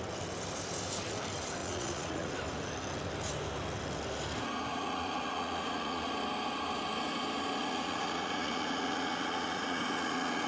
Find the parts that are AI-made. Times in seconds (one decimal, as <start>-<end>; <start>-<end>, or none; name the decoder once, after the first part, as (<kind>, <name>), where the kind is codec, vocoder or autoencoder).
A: 1.6-2.3 (vocoder, Vocos); 4.7-6.1; 7.6-10.5